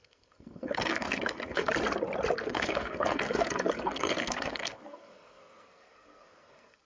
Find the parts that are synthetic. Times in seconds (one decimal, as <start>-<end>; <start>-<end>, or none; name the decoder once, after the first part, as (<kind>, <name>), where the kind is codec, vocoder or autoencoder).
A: 0.0-1.7 (codec, SNAC); 2.4-6.8